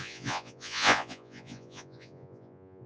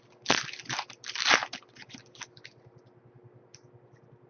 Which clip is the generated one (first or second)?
first